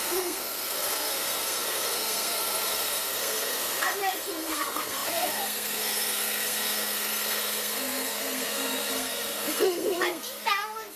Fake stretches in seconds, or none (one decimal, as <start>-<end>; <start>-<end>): 0.0-11.0